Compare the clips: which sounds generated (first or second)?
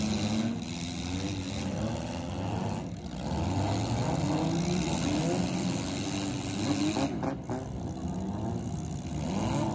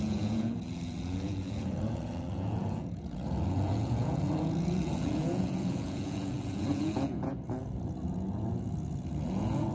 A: second